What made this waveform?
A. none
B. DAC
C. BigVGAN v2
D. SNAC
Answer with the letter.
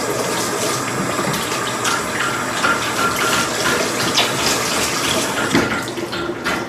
A